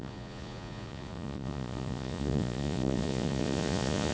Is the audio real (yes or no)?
no